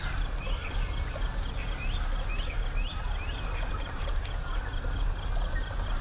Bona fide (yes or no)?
yes